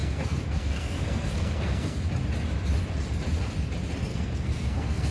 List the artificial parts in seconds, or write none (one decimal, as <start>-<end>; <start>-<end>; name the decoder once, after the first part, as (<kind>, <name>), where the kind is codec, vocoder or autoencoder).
0.0-2.0 (codec, SNAC); 4.1-5.1